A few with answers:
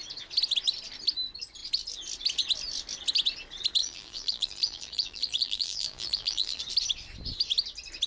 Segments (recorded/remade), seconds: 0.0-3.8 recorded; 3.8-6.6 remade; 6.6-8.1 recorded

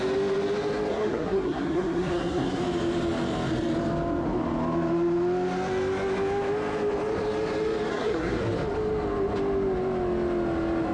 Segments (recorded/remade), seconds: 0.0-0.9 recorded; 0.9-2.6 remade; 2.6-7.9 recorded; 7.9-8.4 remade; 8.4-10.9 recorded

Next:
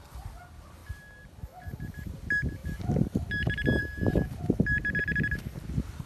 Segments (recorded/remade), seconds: 0.0-0.8 recorded; 0.8-2.2 remade; 2.2-2.6 recorded; 2.6-5.0 remade; 5.0-6.1 recorded

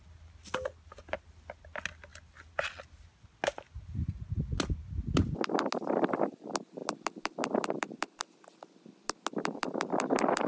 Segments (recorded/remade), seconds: 0.0-10.5 recorded

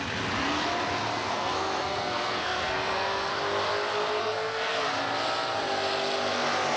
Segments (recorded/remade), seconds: 0.0-1.1 recorded; 1.1-3.3 remade; 3.3-4.2 recorded; 4.2-4.9 remade; 4.9-6.8 recorded

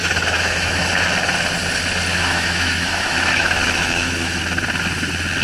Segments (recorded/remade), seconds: 0.0-0.9 remade; 0.9-2.1 recorded; 2.1-4.4 remade; 4.4-5.4 recorded